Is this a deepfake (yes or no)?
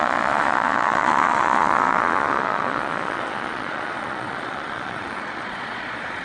yes